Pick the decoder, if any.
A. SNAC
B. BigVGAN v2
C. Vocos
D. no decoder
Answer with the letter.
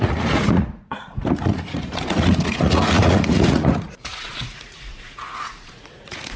C